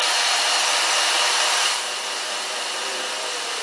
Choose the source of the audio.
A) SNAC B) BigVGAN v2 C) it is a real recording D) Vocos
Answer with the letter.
B